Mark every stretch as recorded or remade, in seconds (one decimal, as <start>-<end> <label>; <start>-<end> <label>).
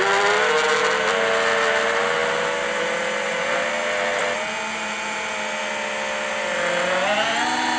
0.0-7.8 recorded